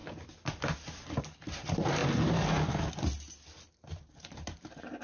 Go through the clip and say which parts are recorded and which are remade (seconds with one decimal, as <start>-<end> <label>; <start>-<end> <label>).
0.0-1.2 recorded; 1.2-2.0 remade; 2.0-3.7 recorded; 3.7-5.0 remade